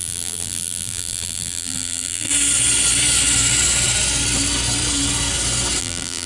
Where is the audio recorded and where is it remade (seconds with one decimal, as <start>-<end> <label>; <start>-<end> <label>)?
0.0-2.3 remade; 2.3-5.8 recorded; 5.8-6.3 remade